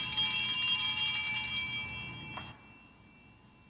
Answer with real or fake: real